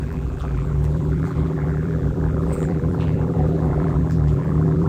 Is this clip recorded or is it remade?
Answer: remade